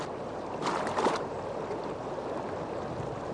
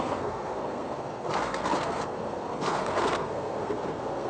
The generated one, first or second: second